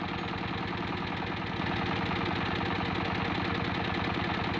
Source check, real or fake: real